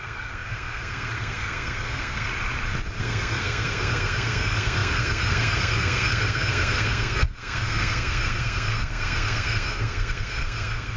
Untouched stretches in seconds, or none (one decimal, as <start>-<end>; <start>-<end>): 2.3-3.0